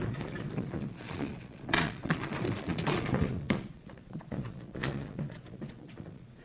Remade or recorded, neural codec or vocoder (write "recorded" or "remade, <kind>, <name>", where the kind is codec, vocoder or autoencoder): remade, vocoder, Vocos